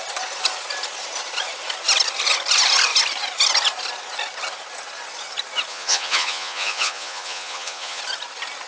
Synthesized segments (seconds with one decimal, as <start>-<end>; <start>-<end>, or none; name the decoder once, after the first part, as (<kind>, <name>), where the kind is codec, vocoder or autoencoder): 5.7-8.0 (vocoder, Vocos)